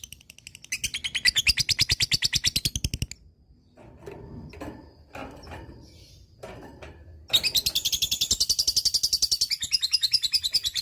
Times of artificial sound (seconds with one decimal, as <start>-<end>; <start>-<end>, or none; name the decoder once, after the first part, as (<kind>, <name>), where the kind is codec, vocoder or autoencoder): none